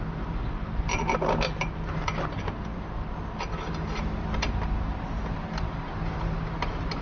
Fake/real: real